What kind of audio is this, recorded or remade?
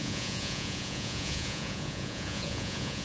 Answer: remade